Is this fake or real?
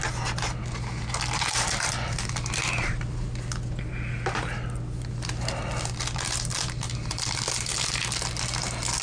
real